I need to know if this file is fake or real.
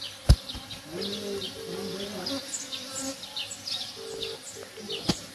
real